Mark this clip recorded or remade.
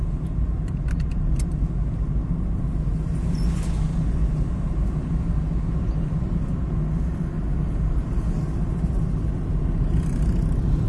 recorded